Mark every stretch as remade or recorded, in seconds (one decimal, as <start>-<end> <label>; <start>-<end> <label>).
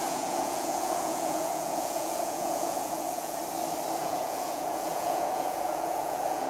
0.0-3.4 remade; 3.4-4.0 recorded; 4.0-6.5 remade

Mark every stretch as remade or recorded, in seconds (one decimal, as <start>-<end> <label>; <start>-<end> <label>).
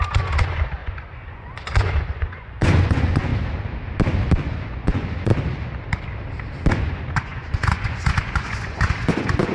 0.0-3.3 remade; 3.3-4.5 recorded; 4.5-5.3 remade; 5.3-6.7 recorded; 6.7-9.5 remade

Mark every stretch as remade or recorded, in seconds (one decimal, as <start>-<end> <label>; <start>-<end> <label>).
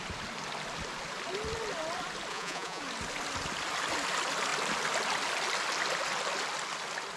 0.0-2.3 recorded; 2.3-2.8 remade; 2.8-7.2 recorded